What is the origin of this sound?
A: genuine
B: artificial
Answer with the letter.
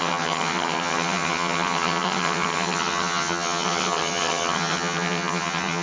B